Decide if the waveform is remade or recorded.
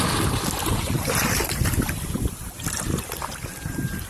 recorded